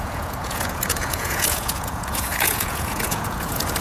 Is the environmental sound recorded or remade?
remade